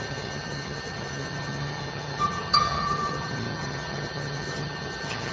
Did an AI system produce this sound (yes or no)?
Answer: yes